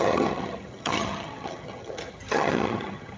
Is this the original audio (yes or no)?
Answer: no